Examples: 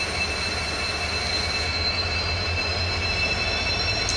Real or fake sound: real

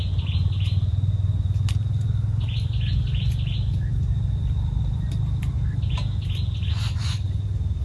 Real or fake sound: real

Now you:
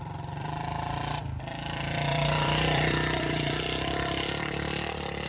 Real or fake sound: fake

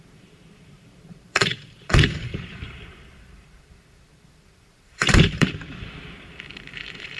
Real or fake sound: fake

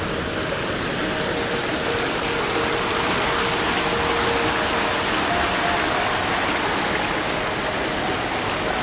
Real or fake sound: real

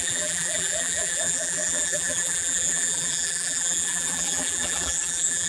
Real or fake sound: fake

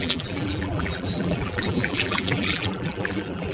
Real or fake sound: fake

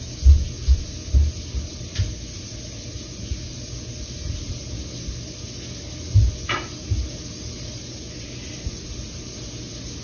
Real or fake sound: real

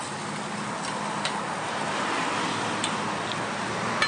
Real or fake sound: real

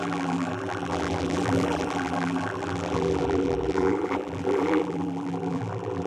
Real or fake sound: fake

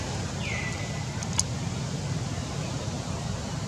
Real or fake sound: real